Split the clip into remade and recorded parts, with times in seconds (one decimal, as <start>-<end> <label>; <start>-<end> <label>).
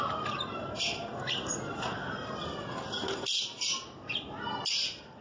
0.0-5.2 recorded